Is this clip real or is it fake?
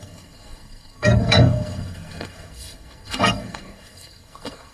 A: fake